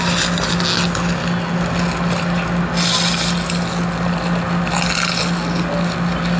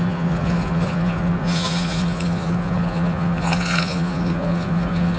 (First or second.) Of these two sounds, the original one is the first